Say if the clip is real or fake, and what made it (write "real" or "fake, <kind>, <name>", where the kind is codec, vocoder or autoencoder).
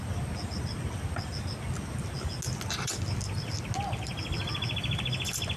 real